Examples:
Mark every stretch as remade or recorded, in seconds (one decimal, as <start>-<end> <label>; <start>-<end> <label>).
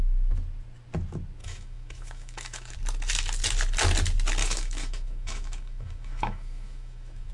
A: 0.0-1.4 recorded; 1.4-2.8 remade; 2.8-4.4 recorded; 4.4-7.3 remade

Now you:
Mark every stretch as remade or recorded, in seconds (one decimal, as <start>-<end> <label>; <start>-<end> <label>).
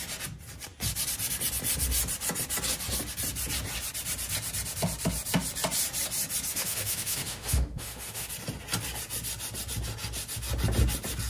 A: 0.0-6.5 recorded; 6.5-8.3 remade; 8.3-11.3 recorded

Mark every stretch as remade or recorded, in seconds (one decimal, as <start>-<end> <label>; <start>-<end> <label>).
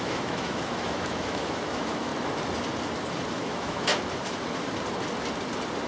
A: 0.0-2.1 remade; 2.1-3.3 recorded; 3.3-3.9 remade; 3.9-5.9 recorded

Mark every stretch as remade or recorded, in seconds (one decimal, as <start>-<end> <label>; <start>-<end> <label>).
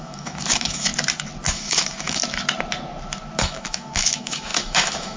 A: 0.0-0.9 remade; 0.9-1.5 recorded; 1.5-2.2 remade; 2.2-3.4 recorded; 3.4-5.2 remade